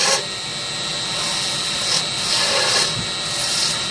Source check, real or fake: real